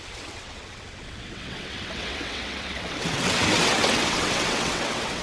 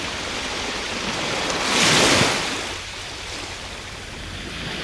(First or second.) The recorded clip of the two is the second